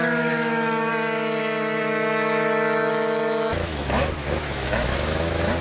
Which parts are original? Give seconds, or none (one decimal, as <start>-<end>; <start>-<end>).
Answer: 0.9-3.5